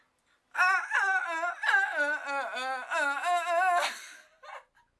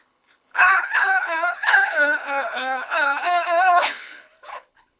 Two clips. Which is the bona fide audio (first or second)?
first